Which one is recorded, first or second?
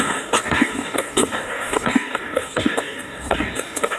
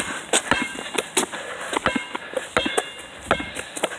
second